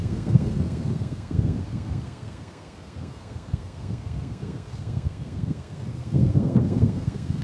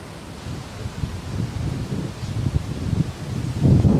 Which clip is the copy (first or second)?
first